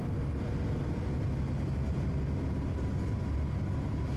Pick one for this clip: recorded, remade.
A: recorded